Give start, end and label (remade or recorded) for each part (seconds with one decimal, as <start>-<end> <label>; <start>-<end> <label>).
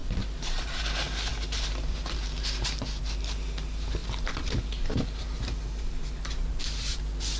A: 0.0-0.8 remade; 0.8-4.0 recorded; 4.0-7.0 remade; 7.0-7.4 recorded